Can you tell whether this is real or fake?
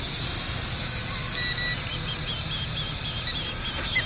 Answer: real